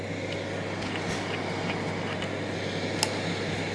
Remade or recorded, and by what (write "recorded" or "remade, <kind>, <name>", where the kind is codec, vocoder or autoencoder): recorded